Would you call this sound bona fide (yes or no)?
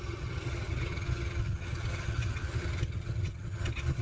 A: no